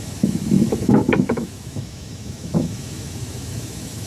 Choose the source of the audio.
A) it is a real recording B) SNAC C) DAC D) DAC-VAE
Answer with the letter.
D